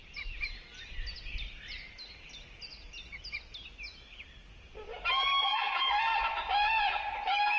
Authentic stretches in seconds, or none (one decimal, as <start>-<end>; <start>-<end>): 0.0-5.4; 5.9-7.6